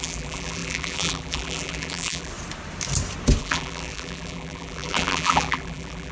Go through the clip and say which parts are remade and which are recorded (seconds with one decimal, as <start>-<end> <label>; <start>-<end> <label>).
0.0-2.3 remade; 2.3-3.4 recorded; 3.4-6.1 remade